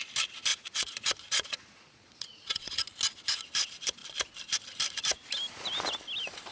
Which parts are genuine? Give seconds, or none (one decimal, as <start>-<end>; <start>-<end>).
0.0-0.5; 2.7-6.5